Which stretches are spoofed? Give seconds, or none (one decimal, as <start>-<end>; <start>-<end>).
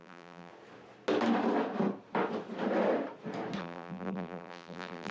0.0-0.5; 3.6-5.1